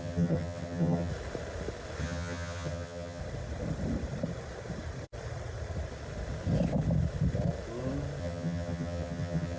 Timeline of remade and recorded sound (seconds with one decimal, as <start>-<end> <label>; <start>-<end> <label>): 0.0-1.1 remade; 1.1-2.0 recorded; 2.0-3.2 remade; 3.2-8.2 recorded; 8.2-9.6 remade